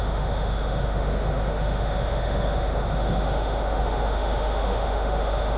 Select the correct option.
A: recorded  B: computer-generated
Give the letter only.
B